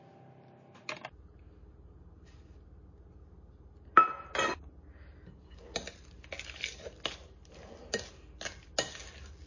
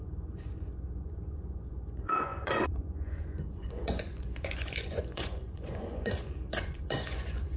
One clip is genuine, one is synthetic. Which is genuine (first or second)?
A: first